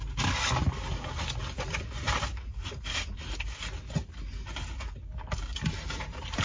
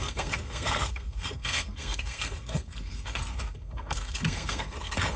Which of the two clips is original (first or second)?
first